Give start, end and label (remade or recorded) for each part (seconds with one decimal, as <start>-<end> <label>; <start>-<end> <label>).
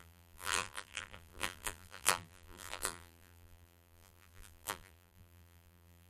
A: 0.0-6.1 remade